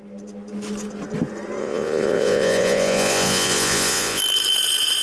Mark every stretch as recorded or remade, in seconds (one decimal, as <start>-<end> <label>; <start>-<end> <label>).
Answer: 0.0-1.6 recorded; 1.6-4.2 remade; 4.2-5.0 recorded